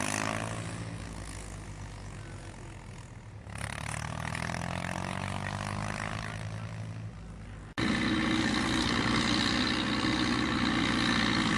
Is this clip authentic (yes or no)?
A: yes